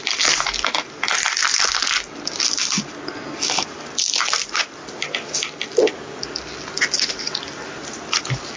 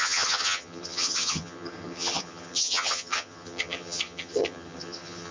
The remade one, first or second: second